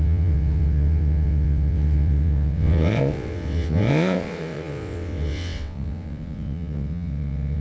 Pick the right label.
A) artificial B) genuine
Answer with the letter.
A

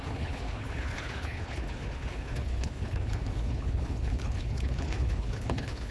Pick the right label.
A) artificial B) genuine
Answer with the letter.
A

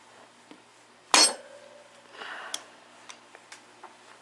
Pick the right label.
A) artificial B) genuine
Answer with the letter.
B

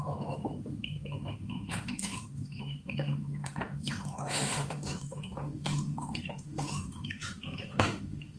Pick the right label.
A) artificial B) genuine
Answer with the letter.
A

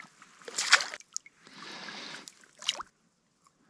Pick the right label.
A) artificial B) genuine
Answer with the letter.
B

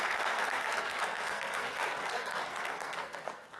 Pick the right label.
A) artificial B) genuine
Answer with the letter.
A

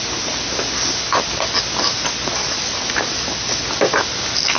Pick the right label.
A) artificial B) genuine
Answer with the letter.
B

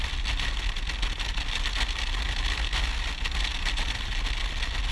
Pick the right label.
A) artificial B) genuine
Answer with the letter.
B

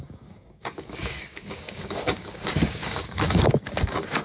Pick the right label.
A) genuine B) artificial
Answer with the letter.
B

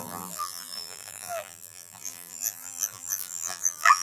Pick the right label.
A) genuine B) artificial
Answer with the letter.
B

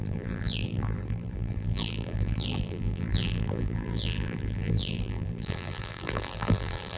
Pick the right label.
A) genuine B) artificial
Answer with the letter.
B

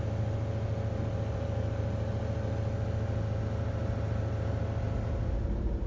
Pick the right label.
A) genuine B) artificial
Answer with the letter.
A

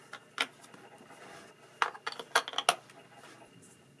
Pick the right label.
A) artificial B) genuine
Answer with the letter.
B